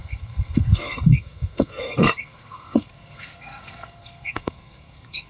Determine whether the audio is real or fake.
fake